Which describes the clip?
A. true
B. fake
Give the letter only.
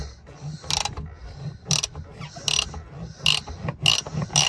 A